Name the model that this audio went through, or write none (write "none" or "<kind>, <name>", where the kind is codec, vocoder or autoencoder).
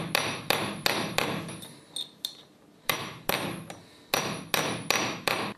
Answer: none